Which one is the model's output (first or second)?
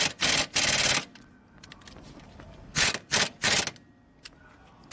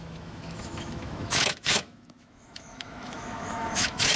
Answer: second